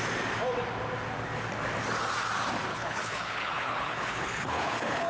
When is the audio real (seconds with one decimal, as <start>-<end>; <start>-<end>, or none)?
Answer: 0.0-2.7